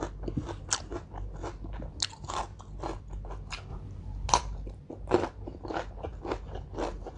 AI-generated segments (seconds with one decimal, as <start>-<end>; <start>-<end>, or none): 3.7-4.3